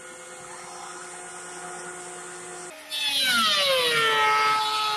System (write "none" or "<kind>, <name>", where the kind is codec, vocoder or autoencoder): none